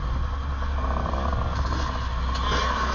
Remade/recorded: recorded